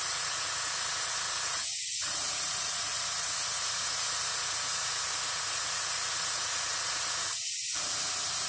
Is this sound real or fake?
fake